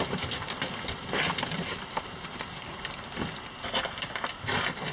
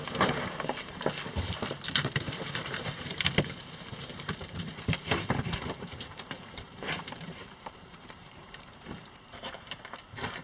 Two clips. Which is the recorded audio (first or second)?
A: first